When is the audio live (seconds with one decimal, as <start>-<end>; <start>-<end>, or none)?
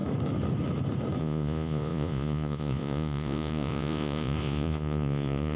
0.0-1.2